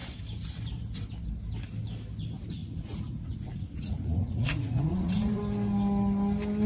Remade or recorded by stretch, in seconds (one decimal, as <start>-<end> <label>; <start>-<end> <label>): 0.0-2.6 recorded; 2.6-5.4 remade; 5.4-6.7 recorded